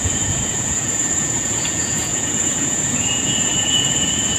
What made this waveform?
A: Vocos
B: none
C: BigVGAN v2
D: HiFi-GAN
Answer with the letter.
A